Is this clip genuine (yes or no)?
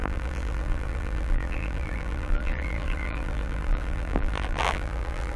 no